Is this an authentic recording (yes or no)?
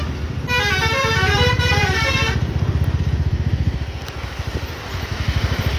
no